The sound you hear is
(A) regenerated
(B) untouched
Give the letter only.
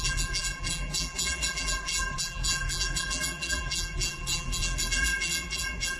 A